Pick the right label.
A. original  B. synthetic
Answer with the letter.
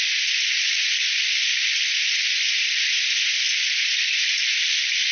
B